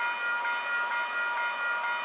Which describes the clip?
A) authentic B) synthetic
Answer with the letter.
A